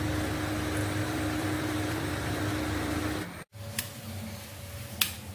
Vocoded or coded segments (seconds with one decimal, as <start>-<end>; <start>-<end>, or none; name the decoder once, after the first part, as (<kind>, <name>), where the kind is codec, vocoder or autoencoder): 0.8-4.0 (vocoder, BigVGAN v2)